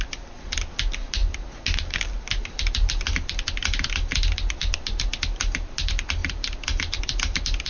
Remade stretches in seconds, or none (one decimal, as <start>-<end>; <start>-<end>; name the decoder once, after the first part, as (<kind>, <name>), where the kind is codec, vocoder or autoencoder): 6.2-7.0 (vocoder, BigVGAN v2)